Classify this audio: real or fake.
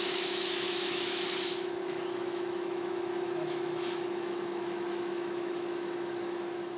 fake